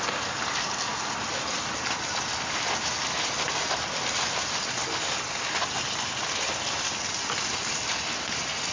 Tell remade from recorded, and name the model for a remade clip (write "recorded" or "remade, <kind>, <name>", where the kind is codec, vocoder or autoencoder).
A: recorded